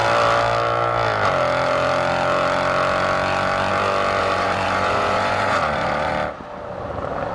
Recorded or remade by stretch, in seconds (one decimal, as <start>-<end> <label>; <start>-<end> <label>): 0.0-4.2 recorded; 4.2-6.1 remade; 6.1-7.3 recorded